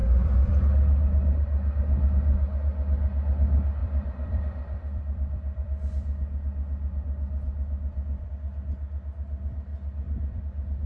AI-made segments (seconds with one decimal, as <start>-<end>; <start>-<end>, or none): 0.0-0.6; 3.8-8.3; 9.7-10.4